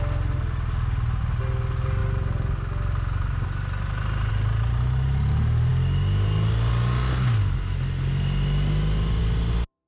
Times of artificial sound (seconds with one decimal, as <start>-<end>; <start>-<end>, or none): none